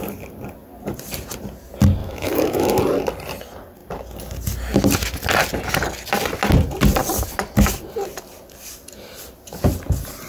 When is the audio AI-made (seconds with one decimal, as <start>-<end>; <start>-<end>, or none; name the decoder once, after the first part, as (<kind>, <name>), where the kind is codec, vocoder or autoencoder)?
2.0-2.8 (autoencoder, DAC-VAE)